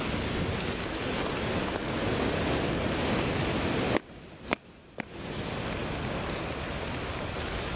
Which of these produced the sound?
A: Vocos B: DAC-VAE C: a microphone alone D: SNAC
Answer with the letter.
C